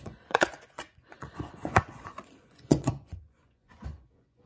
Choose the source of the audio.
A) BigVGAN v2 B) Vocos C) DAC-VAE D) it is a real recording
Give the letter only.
B